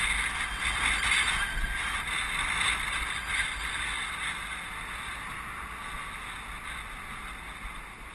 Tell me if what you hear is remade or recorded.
recorded